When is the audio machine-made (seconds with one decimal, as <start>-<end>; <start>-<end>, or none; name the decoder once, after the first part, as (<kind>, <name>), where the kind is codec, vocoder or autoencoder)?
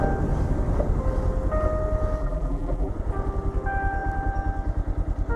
2.2-2.9 (vocoder, BigVGAN v2)